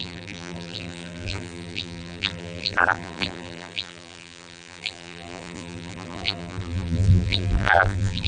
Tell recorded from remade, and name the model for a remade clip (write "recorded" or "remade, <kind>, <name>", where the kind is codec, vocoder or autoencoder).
remade, vocoder, BigVGAN v2